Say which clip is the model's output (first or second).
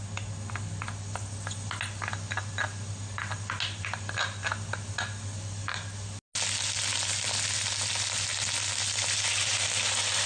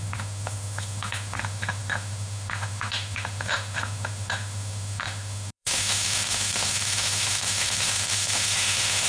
second